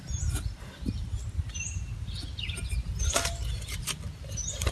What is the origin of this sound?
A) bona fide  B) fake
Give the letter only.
A